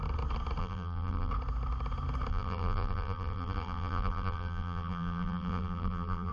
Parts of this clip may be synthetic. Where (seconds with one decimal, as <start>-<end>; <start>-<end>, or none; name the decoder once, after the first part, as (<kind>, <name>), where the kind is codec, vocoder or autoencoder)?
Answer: 0.6-1.3 (vocoder, BigVGAN v2); 2.3-6.3